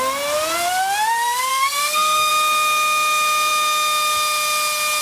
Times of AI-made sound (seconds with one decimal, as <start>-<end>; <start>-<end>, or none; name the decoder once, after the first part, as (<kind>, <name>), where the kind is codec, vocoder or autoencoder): 1.5-2.3 (codec, SNAC)